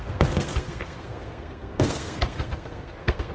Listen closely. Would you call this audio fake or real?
fake